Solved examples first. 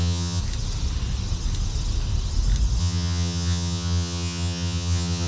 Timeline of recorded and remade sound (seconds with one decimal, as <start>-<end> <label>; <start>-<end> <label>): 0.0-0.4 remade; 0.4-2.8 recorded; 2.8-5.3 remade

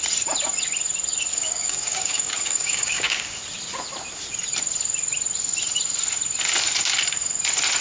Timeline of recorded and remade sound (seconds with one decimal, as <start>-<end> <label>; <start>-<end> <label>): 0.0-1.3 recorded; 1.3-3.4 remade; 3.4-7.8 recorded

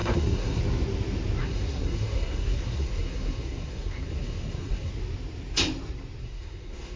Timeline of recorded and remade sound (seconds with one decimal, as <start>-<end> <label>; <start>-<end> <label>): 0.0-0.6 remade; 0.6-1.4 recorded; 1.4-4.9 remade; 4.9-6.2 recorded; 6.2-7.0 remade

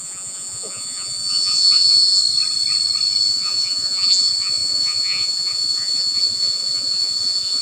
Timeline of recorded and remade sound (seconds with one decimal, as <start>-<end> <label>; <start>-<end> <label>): 0.0-2.2 remade; 2.2-3.3 recorded; 3.3-7.6 remade